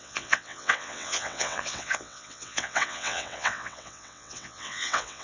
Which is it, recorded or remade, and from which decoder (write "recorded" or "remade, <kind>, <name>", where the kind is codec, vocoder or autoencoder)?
remade, vocoder, WaveNeXt